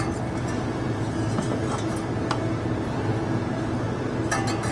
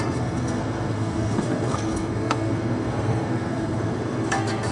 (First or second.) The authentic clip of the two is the first